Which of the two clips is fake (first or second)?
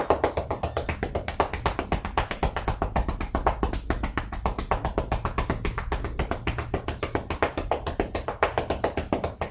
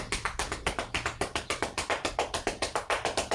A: second